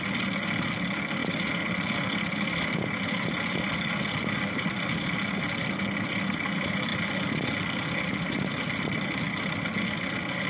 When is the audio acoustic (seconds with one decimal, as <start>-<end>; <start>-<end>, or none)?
0.0-10.5